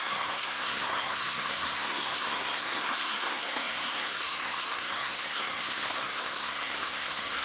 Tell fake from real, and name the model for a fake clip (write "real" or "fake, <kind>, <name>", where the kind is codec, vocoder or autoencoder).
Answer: fake, codec, SNAC